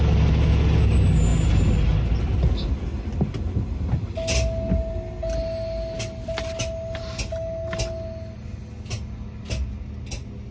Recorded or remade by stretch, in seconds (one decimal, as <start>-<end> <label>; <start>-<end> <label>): 0.0-10.5 recorded